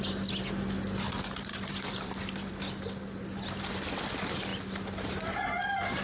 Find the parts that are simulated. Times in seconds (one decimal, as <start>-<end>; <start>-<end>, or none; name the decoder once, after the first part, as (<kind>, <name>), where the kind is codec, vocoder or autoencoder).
1.5-2.5 (vocoder, BigVGAN v2)